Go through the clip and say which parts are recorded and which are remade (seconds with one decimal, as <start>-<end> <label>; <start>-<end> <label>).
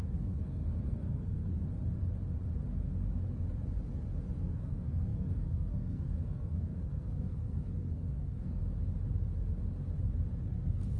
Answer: 0.0-1.6 remade; 1.6-4.4 recorded; 4.4-8.6 remade; 8.6-10.4 recorded; 10.4-11.0 remade